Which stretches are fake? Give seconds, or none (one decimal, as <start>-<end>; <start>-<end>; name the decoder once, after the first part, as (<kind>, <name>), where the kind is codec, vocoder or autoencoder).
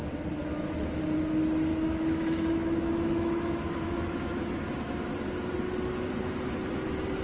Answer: 0.4-1.0 (autoencoder, DAC-VAE); 1.7-4.5